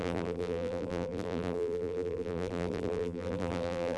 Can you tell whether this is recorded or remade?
remade